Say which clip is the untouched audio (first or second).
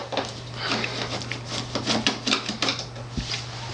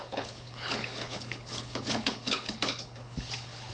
first